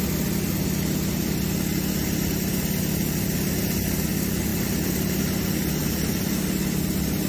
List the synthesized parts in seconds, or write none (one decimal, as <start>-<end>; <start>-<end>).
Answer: 4.5-5.2; 5.8-6.6